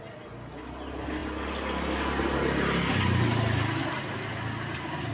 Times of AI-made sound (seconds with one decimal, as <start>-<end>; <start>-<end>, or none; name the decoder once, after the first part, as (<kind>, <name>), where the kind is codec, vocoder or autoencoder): none